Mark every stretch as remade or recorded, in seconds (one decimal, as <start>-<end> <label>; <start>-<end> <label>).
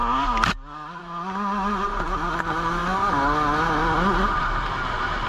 0.0-5.3 recorded